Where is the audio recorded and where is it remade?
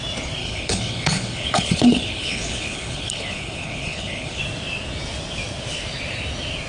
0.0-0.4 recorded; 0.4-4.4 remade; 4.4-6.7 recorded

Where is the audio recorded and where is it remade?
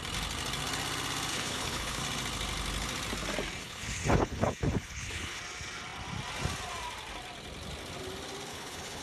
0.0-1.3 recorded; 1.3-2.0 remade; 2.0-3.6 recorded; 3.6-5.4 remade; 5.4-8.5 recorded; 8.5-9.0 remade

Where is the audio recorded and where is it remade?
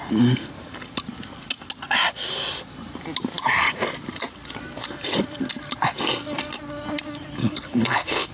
0.0-7.4 recorded; 7.4-8.3 remade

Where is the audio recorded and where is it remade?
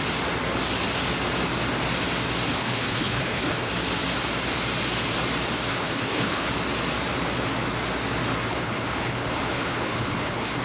0.0-2.5 recorded; 2.5-3.7 remade; 3.7-5.7 recorded; 5.7-6.5 remade; 6.5-8.5 recorded; 8.5-10.6 remade